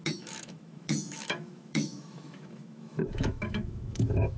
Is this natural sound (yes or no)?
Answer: no